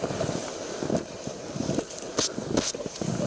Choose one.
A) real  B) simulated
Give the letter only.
A